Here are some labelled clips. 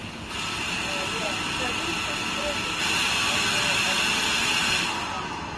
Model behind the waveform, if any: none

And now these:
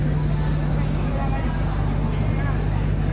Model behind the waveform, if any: none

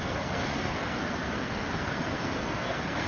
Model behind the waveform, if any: codec, SNAC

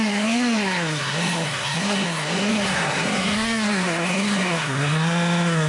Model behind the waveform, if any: codec, SNAC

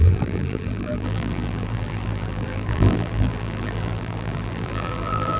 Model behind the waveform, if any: vocoder, BigVGAN v2